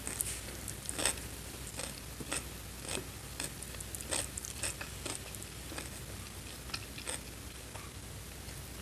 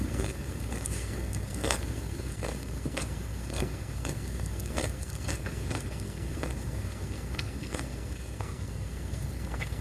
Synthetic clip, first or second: second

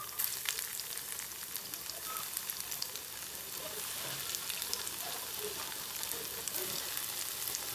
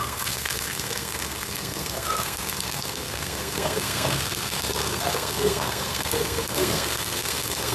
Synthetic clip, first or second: second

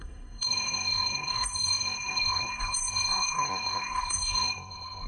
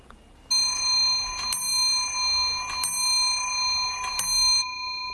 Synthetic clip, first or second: first